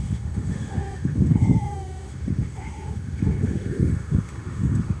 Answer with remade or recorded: remade